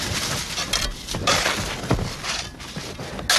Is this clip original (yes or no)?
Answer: yes